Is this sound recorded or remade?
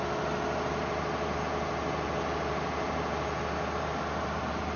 recorded